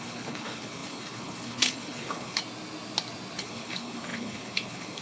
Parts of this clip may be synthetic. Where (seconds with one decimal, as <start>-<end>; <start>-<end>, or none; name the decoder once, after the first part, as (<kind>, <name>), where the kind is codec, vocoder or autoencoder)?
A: 0.0-2.4 (codec, HILCodec); 3.4-5.0